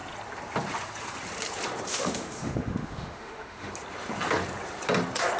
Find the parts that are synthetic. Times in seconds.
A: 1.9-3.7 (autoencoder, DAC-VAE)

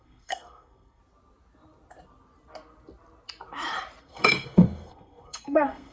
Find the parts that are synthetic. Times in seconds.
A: 0.0-1.0 (codec, SNAC); 4.0-5.9

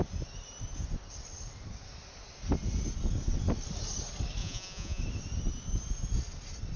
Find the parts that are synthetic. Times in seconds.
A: 4.4-5.0 (vocoder, Vocos)

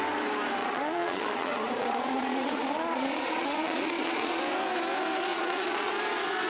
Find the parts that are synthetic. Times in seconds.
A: 0.6-4.4 (vocoder, Vocos); 5.3-5.9

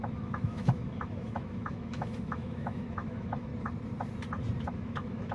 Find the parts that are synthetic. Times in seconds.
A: 0.0-3.5 (autoencoder, DAC-VAE); 4.7-5.3

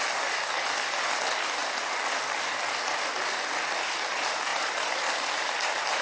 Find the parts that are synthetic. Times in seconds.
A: none

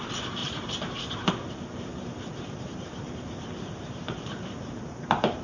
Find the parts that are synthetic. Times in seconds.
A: 0.4-1.3 (vocoder, BigVGAN v2); 1.9-5.4

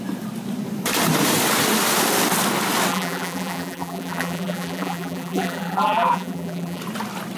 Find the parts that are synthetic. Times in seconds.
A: 2.9-6.8 (vocoder, BigVGAN v2)